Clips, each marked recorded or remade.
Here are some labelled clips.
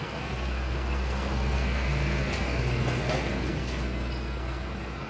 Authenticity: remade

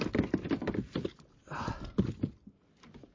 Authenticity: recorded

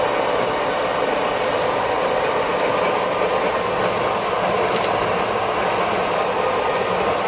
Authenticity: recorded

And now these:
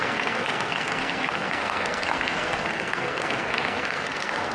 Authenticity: remade